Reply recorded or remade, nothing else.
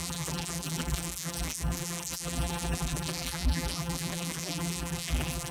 remade